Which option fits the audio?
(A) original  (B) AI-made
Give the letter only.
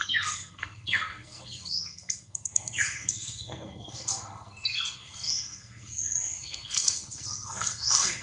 B